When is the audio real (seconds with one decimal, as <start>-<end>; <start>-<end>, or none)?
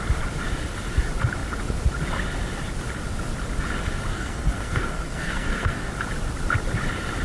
0.0-4.1; 5.9-7.2